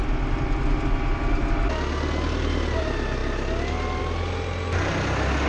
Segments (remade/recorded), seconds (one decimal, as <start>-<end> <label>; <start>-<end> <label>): 0.0-5.5 recorded